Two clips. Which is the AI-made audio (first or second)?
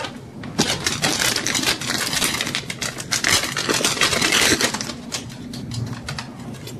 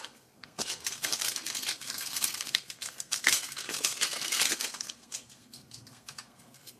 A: second